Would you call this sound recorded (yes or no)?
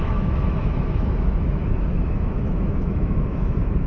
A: no